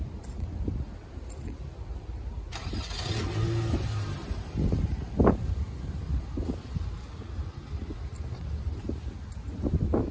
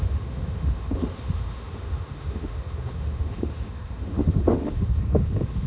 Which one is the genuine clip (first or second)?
first